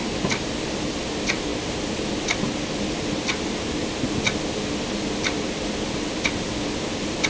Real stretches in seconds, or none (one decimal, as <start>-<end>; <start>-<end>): 0.0-7.3